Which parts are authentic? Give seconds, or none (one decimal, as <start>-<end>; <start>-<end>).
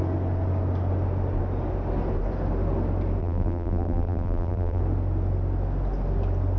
0.0-3.2; 4.8-6.6